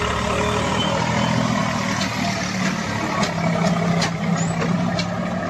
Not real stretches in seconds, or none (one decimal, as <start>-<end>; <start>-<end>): none